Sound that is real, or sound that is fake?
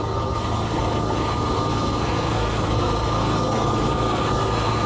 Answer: fake